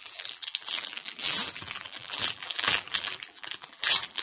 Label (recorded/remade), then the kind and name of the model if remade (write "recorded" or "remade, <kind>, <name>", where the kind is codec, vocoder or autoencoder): remade, vocoder, BigVGAN v2